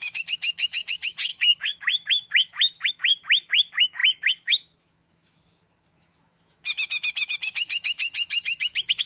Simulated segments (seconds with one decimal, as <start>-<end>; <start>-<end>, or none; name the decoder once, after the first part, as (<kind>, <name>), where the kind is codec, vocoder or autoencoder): 0.0-9.1 (autoencoder, DAC-VAE)

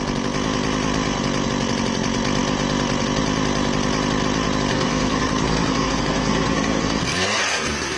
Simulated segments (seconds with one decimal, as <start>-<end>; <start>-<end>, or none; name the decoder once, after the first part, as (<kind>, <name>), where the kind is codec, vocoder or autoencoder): 4.7-8.0 (codec, SNAC)